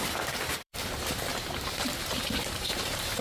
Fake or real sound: fake